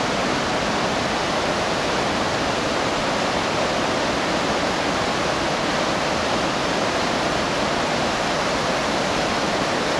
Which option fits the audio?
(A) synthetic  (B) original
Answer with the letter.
B